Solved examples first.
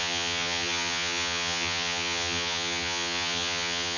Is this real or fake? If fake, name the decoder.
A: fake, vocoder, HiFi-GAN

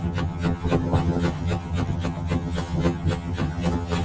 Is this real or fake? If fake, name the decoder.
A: fake, vocoder, HiFi-GAN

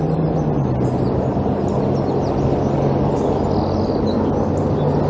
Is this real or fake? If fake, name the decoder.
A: real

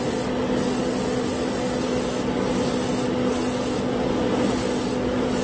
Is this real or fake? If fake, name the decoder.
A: real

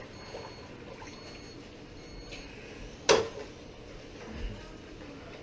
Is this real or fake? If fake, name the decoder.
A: real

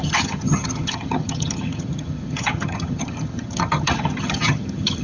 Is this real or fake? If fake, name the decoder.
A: fake, vocoder, HiFi-GAN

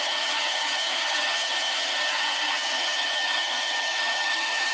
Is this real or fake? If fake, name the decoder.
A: fake, vocoder, HiFi-GAN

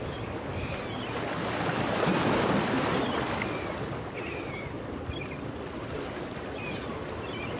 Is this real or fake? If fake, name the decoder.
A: real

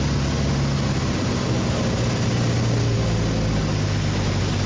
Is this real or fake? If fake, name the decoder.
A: real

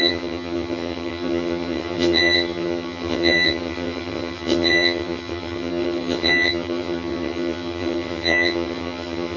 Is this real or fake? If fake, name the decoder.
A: fake, vocoder, HiFi-GAN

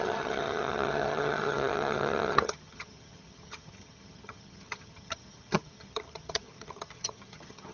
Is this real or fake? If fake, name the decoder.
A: fake, vocoder, HiFi-GAN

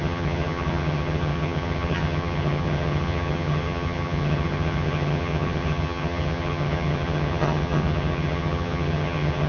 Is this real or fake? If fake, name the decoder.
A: fake, vocoder, HiFi-GAN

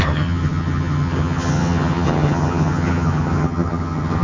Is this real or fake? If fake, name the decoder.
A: fake, vocoder, HiFi-GAN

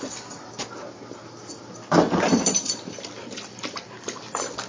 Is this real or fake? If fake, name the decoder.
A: real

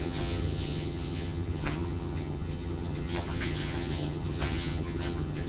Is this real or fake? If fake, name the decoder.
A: fake, vocoder, HiFi-GAN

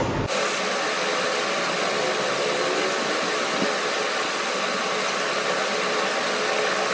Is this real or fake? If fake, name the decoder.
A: real